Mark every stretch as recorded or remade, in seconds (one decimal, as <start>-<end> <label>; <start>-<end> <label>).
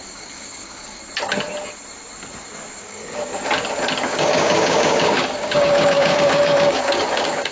0.0-1.0 remade; 1.0-2.8 recorded; 2.8-3.3 remade; 3.3-4.0 recorded; 4.0-7.5 remade